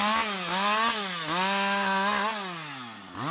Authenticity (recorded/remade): recorded